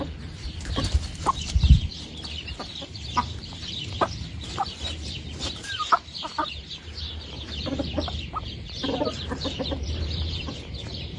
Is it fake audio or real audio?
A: fake